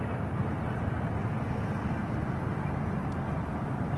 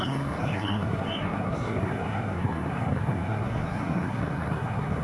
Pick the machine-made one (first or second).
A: second